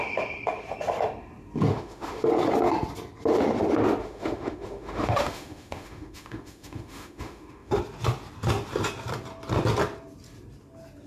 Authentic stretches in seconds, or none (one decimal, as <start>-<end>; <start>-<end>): 0.0-1.7; 2.3-4.0; 7.8-11.1

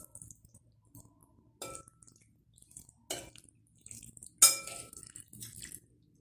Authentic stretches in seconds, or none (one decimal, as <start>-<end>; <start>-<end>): 0.0-6.2

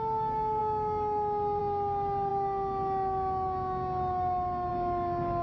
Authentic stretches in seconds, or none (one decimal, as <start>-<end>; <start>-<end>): 0.0-5.4

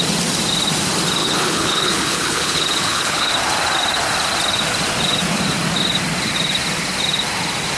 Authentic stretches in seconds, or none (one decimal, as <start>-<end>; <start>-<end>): 0.0-1.2; 3.3-7.8

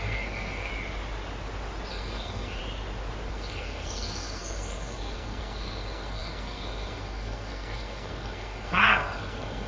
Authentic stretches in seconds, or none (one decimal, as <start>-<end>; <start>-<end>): 0.7-1.9; 2.6-3.3